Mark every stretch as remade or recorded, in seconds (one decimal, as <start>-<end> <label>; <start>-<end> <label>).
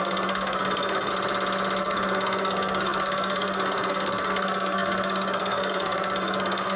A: 0.0-1.1 remade; 1.1-1.8 recorded; 1.8-6.8 remade